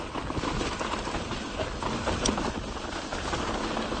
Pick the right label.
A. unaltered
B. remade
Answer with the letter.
A